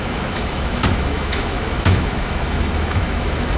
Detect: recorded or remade remade